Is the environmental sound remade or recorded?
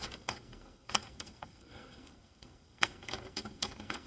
remade